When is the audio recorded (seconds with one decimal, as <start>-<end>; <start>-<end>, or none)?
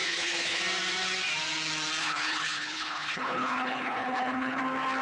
0.6-2.0; 4.6-5.0